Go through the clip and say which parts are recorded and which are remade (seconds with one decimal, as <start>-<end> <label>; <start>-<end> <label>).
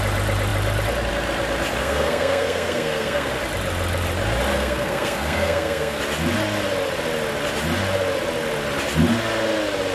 0.0-1.8 recorded; 1.8-3.3 remade; 3.3-4.5 recorded; 4.5-6.0 remade; 6.0-9.9 recorded